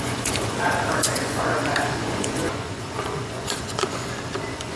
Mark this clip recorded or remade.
remade